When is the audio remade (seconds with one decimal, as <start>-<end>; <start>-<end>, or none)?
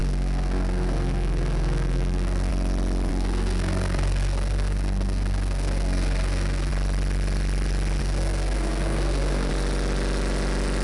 0.0-2.5; 3.1-6.7; 8.0-9.5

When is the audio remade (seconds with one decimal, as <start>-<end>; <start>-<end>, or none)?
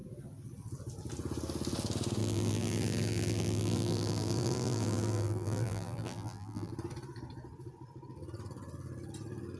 2.2-6.7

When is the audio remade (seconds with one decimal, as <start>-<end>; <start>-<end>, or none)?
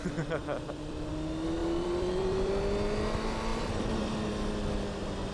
0.4-1.1; 1.6-2.5; 3.5-4.3